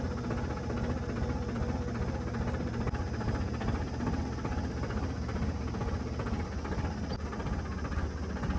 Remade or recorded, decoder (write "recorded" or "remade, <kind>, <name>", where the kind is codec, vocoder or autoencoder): recorded